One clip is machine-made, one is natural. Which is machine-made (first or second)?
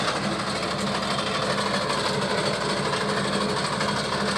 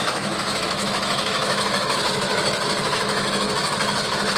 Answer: second